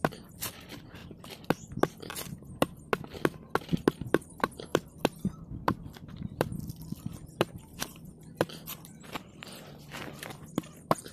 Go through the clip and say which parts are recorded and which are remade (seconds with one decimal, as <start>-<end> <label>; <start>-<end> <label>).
0.0-0.6 recorded; 0.6-1.0 remade; 1.0-3.9 recorded; 3.9-11.1 remade